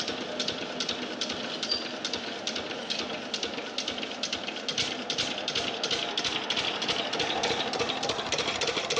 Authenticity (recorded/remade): recorded